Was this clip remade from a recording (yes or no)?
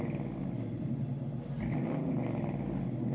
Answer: no